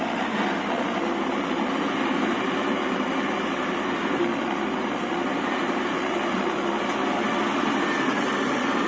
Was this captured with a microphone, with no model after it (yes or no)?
yes